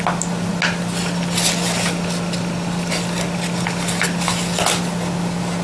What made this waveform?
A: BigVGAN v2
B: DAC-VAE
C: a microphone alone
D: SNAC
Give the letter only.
C